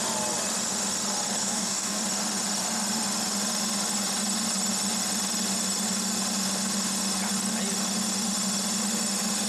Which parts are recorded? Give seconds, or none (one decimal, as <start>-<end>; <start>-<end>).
0.0-1.4; 2.0-9.5